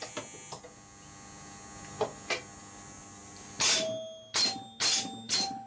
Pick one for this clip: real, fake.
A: real